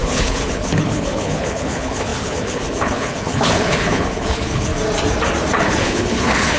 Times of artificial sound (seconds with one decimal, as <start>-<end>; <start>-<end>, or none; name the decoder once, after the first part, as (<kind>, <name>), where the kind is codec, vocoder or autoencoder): 0.0-4.7 (codec, HILCodec); 5.6-6.6